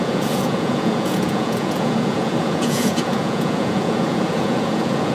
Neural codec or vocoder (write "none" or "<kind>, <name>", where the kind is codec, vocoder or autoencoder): vocoder, Vocos